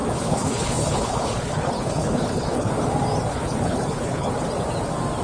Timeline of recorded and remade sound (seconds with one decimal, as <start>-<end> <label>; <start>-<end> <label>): 0.0-2.7 remade; 2.7-3.3 recorded; 3.3-4.3 remade; 4.3-5.2 recorded